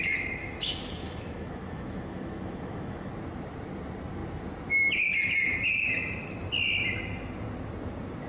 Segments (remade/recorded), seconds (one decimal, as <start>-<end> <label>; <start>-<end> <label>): 0.0-0.4 recorded; 0.4-3.1 remade; 3.1-8.3 recorded